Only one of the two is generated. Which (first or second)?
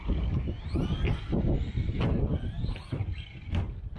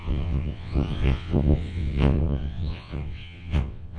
second